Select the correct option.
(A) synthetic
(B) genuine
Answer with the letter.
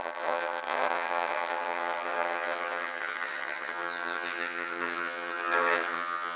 A